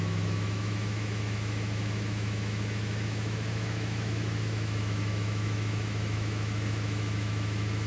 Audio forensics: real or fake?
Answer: fake